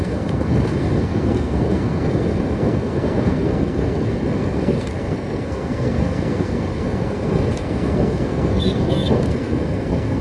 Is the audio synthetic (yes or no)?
yes